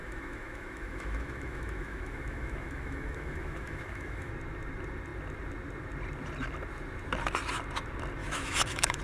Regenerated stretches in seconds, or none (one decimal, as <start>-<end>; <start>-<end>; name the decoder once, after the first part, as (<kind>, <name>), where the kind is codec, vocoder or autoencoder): 0.0-4.3 (autoencoder, DAC-VAE); 8.2-9.0